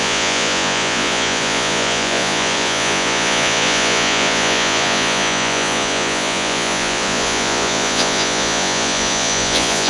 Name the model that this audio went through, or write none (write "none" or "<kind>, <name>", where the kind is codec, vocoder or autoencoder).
vocoder, Vocos